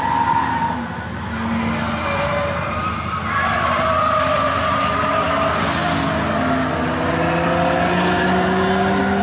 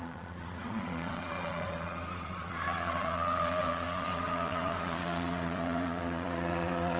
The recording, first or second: first